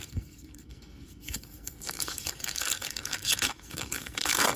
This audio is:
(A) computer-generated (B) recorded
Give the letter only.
A